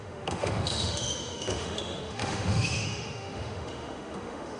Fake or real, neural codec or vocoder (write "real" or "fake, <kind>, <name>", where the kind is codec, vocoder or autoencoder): fake, autoencoder, DAC-VAE